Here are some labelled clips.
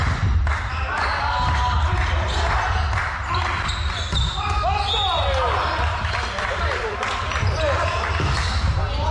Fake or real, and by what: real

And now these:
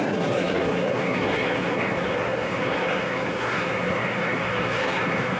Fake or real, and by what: fake, codec, SNAC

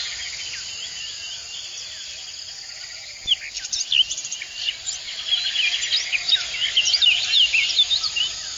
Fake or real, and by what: real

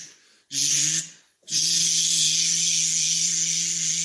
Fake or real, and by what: fake, vocoder, Vocos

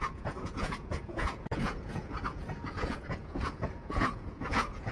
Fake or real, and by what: fake, vocoder, Vocos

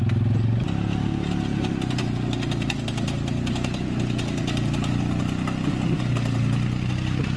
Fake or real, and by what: real